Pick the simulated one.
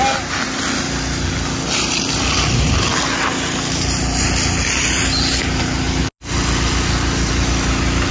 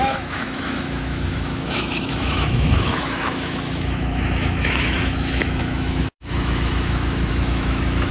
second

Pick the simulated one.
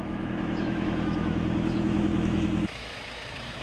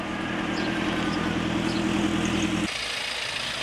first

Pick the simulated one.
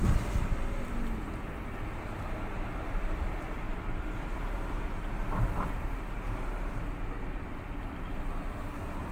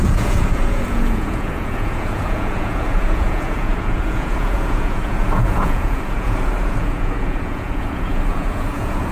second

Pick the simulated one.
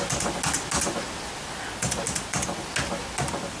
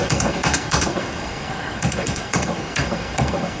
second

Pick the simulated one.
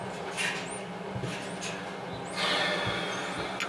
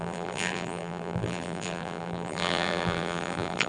second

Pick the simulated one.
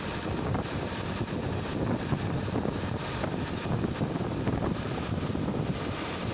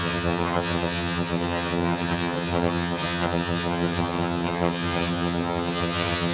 second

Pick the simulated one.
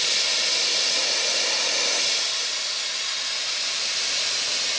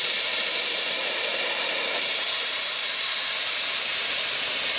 second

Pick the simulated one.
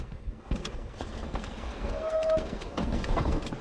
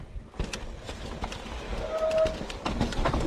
first